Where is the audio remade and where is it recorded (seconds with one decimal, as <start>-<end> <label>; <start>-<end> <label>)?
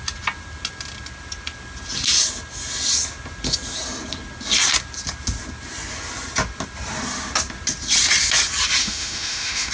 0.0-8.8 recorded; 8.8-9.7 remade